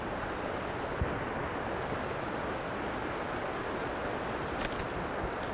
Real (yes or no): yes